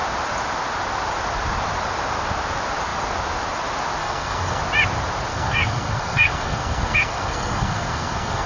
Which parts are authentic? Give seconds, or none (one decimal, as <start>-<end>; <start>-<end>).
0.0-4.0; 4.6-5.3